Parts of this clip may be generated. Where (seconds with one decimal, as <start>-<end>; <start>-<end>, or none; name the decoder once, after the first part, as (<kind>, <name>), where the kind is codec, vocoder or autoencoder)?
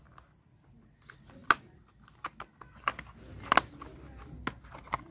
none